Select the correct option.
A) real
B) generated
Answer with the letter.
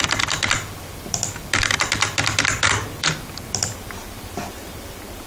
B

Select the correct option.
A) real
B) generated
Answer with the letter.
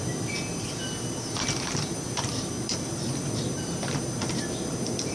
B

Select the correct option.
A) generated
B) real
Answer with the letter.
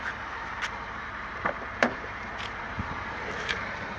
A